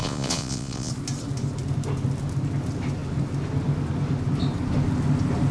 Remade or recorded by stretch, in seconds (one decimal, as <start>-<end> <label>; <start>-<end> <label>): 0.0-0.9 remade; 0.9-5.5 recorded